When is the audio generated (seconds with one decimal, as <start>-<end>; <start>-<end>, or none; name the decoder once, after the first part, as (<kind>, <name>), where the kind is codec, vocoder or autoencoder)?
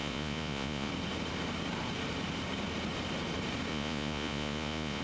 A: 0.0-0.9 (vocoder, Vocos); 3.7-5.0